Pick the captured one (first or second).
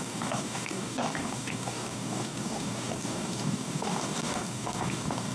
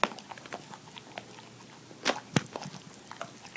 second